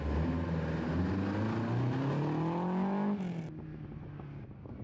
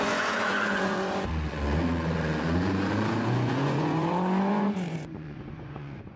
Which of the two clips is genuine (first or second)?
first